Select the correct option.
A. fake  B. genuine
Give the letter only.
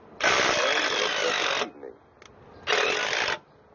B